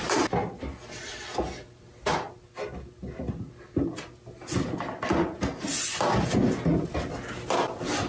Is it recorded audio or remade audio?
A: recorded